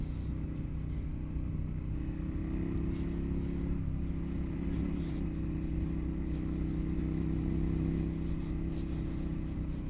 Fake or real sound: real